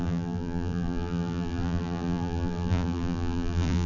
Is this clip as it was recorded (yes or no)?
no